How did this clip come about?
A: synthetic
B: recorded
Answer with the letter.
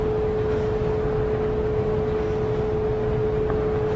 B